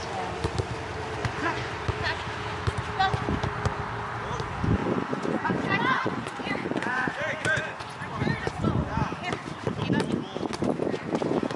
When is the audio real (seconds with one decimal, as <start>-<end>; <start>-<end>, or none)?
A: 0.0-1.2; 1.7-4.8; 9.1-11.6